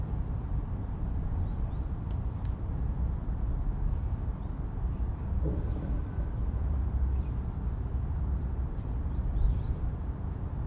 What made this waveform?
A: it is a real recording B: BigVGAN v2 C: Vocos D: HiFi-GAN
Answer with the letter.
B